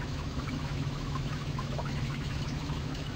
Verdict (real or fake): fake